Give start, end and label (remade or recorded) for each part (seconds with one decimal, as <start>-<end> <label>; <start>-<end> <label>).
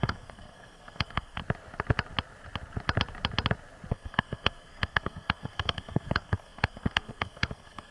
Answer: 0.0-1.4 remade; 1.4-3.9 recorded; 3.9-7.9 remade